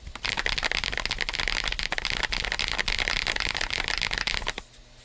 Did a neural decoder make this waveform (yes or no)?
no